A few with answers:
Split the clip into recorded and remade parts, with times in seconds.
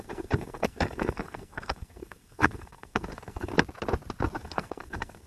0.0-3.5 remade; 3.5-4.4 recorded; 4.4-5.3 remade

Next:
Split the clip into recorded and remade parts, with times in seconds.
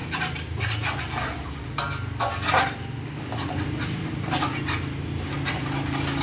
0.0-6.2 recorded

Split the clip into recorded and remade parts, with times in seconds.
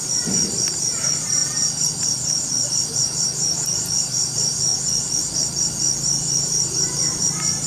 0.0-1.4 remade; 1.4-2.7 recorded; 2.7-4.7 remade; 4.7-6.4 recorded; 6.4-7.7 remade